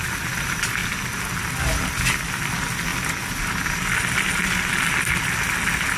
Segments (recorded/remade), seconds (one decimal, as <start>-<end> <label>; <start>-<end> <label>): 0.0-6.0 recorded